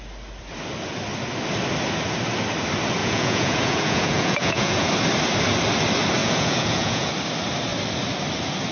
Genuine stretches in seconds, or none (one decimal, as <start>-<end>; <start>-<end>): 0.0-3.0; 4.9-6.2; 7.1-8.7